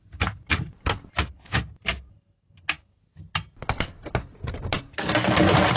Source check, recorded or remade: recorded